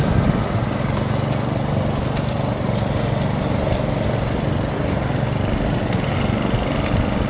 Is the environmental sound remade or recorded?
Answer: recorded